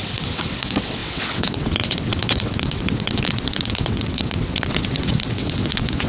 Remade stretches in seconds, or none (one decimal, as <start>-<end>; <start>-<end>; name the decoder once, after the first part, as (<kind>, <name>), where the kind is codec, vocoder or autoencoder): 0.0-6.1 (vocoder, WaveNeXt)